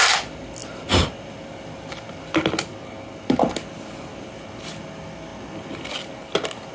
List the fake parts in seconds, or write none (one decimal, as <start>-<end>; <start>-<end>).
none